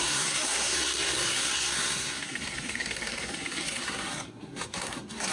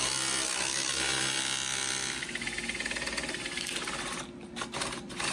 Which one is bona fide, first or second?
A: second